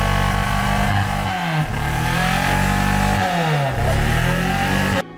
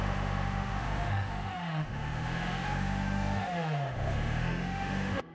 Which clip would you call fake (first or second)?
second